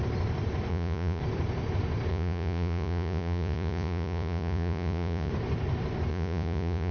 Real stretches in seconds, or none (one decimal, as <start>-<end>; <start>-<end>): 0.0-0.7; 1.2-2.1; 5.3-6.1